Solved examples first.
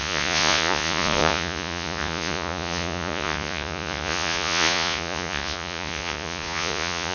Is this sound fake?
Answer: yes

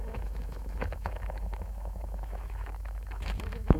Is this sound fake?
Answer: yes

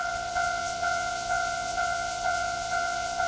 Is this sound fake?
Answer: yes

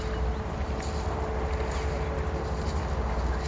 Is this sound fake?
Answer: no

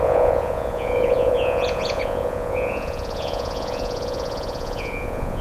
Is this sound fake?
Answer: yes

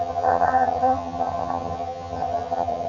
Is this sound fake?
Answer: yes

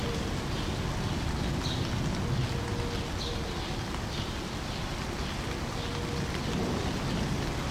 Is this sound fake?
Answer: no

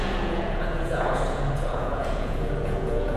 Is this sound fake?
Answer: yes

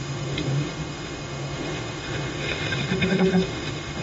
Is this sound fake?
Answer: yes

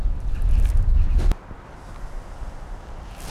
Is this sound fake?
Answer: no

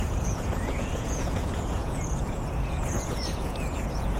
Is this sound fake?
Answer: yes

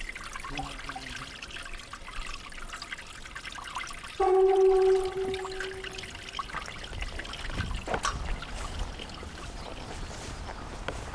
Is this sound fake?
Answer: no